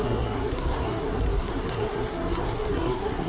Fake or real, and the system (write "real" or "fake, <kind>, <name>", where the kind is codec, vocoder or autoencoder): fake, codec, SNAC